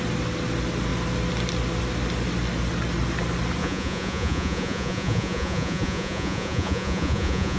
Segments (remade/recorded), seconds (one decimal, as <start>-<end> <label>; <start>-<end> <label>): 0.0-3.6 recorded; 3.6-7.6 remade